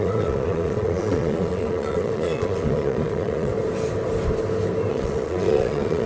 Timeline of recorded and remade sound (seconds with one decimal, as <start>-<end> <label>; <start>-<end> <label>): 0.0-3.5 remade; 3.5-4.9 recorded; 4.9-6.1 remade